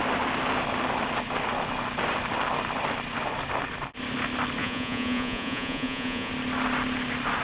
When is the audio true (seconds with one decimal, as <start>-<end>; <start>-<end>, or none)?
0.0-4.6; 6.3-7.4